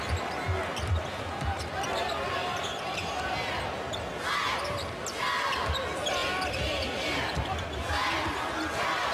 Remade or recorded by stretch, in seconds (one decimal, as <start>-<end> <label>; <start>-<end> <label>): 0.0-9.1 recorded